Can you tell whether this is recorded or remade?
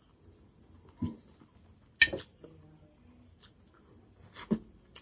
recorded